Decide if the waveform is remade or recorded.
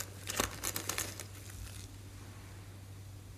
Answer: recorded